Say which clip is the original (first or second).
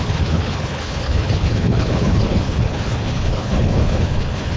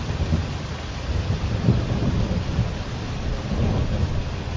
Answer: second